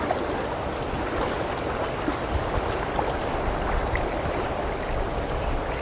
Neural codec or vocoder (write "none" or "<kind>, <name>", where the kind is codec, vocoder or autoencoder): none